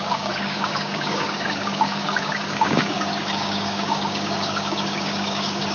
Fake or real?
fake